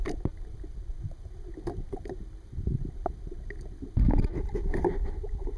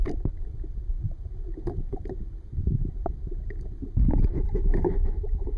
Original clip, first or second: first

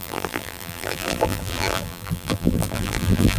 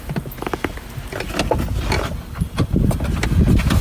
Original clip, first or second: second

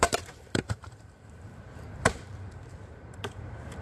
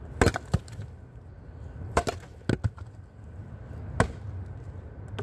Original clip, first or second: second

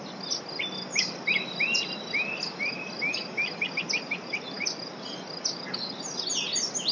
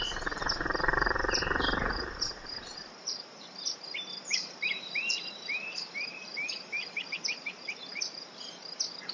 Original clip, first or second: first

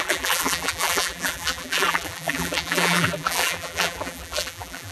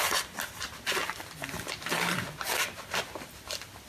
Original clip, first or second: second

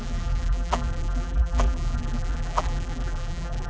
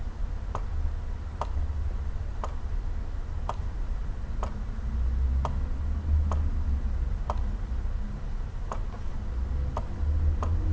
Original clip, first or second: second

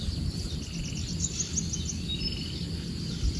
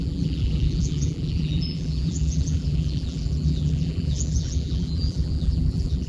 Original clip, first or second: first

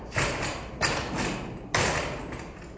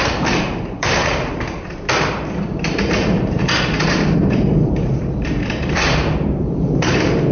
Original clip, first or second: first